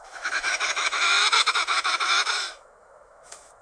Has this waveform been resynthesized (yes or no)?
yes